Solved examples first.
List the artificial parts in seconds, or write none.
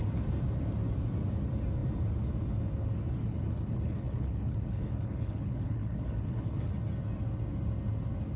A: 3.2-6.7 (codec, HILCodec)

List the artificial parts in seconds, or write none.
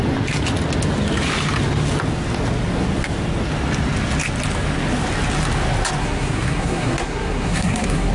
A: 6.0-8.1 (codec, SNAC)